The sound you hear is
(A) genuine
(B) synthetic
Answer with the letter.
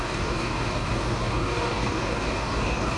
B